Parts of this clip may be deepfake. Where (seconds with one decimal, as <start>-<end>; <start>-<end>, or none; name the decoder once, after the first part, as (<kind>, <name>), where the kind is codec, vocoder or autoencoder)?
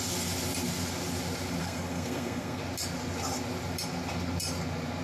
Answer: 1.6-2.6 (codec, SNAC)